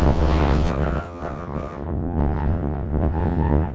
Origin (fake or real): fake